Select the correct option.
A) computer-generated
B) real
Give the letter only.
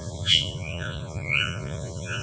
A